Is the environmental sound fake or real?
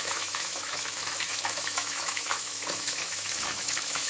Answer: fake